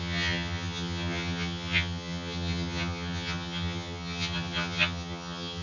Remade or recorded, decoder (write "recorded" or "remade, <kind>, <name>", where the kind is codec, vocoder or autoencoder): remade, vocoder, HiFi-GAN